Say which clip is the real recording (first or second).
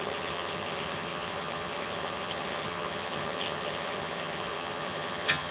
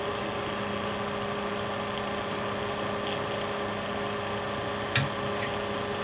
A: second